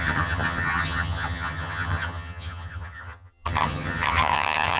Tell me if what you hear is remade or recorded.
remade